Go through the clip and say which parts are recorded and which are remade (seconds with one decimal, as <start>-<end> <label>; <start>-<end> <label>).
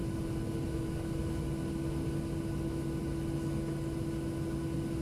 0.0-5.0 recorded